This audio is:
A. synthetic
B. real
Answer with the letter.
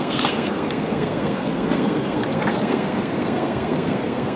A